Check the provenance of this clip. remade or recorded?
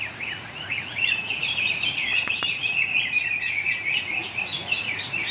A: remade